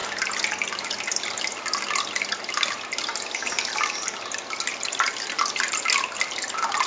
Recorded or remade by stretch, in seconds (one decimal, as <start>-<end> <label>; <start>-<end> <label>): 0.0-4.7 recorded; 4.7-5.8 remade; 5.8-6.9 recorded